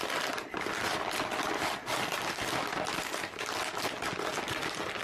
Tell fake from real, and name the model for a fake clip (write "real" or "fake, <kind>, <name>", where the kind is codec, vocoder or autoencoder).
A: real